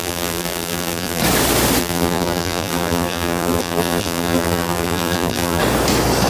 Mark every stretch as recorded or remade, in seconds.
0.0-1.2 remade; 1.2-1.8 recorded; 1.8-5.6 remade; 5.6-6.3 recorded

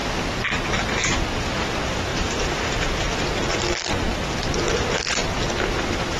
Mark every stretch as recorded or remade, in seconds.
0.0-2.1 recorded; 2.1-3.1 remade; 3.1-6.2 recorded

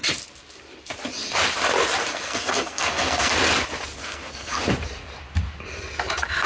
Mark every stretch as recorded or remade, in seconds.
0.0-2.1 recorded; 2.1-3.3 remade; 3.3-4.0 recorded; 4.0-4.6 remade; 4.6-6.5 recorded

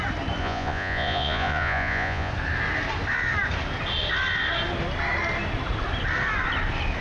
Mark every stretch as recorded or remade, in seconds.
0.0-0.4 recorded; 0.4-2.3 remade; 2.3-7.0 recorded

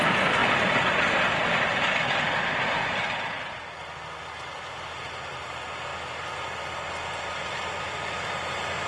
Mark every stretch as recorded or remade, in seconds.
0.0-8.9 recorded

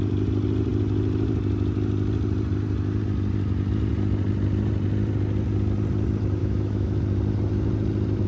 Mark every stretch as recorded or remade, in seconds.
0.0-6.4 recorded; 6.4-7.0 remade; 7.0-8.3 recorded

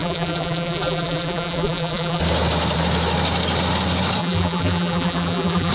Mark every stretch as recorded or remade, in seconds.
0.0-2.2 remade; 2.2-4.2 recorded; 4.2-5.7 remade

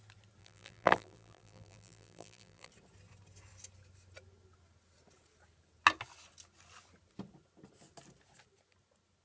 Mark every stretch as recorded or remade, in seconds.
0.0-0.4 recorded; 0.4-2.7 remade; 2.7-9.2 recorded